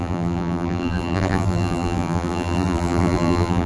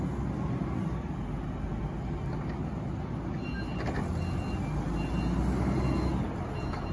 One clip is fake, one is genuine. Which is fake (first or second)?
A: first